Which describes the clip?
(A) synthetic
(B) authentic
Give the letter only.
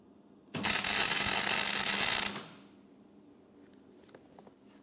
B